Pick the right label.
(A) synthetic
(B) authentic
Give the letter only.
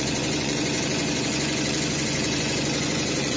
A